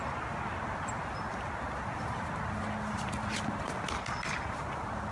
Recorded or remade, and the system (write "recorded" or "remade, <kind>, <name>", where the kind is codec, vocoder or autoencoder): recorded